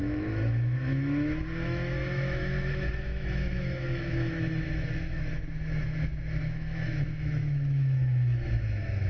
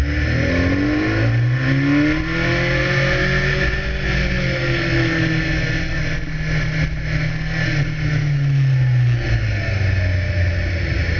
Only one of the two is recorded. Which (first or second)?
second